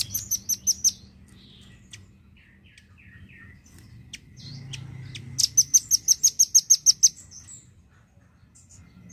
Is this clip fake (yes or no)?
no